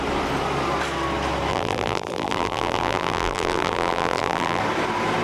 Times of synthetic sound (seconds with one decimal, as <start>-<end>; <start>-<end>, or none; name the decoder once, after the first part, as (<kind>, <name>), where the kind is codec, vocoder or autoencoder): 1.5-4.6 (vocoder, BigVGAN v2)